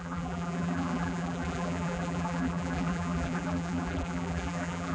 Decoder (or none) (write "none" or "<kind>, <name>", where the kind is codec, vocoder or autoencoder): vocoder, BigVGAN v2